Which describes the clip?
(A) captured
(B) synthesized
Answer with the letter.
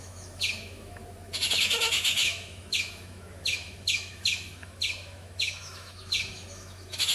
B